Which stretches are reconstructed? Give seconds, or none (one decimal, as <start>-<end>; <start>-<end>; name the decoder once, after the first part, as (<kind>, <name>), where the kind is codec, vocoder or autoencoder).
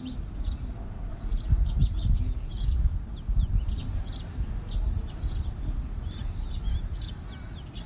none